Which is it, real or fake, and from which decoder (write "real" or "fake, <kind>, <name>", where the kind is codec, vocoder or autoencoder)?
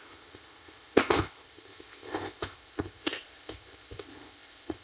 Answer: fake, codec, ZipCodec